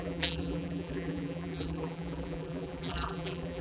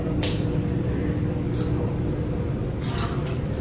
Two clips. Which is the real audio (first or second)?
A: second